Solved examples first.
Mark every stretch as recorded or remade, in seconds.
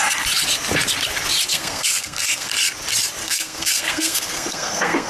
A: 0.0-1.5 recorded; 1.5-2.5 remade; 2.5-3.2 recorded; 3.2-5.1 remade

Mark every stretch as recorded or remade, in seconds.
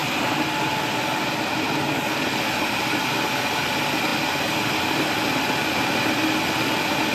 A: 0.0-7.1 recorded